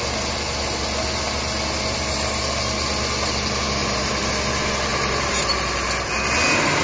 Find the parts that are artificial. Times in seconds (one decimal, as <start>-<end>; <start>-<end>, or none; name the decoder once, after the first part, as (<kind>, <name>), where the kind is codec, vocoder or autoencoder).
3.8-4.3 (vocoder, BigVGAN v2); 4.9-5.5